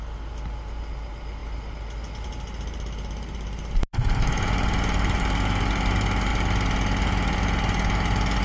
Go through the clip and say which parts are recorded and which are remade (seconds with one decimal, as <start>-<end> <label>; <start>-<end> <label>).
0.0-8.4 recorded